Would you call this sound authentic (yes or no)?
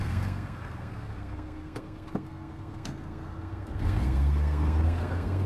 no